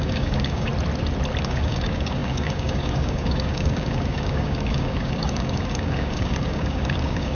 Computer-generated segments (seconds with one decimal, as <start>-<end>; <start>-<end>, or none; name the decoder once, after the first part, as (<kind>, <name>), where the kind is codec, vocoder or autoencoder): 0.0-0.7 (codec, DAC); 1.4-7.3